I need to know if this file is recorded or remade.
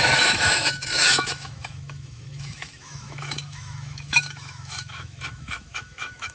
remade